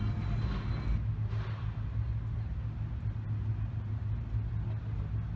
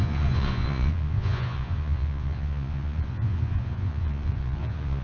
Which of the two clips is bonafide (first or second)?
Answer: first